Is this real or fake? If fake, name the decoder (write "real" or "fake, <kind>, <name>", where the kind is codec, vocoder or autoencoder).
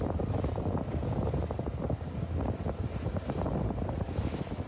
real